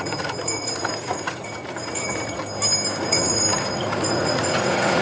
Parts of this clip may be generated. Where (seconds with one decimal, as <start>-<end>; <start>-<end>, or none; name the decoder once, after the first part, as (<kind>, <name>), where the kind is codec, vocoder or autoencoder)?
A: 0.0-2.4 (vocoder, Vocos); 3.0-5.0